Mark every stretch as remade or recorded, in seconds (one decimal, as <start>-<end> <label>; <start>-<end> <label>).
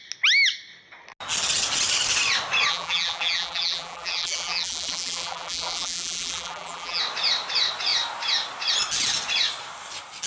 0.0-2.7 recorded; 2.7-7.0 remade; 7.0-10.3 recorded